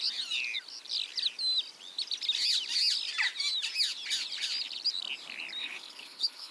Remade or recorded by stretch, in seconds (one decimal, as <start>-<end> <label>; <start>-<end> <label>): 0.0-5.6 recorded; 5.6-6.5 remade